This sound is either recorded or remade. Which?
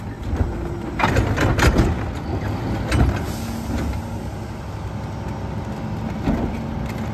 recorded